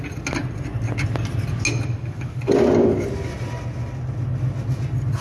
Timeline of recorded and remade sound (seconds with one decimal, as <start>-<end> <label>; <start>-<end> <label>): 0.0-5.2 recorded